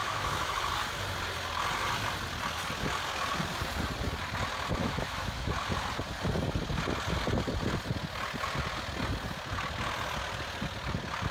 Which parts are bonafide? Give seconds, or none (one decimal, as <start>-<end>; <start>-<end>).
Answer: 0.6-4.8; 5.5-11.3